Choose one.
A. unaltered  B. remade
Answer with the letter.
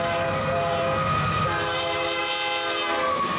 A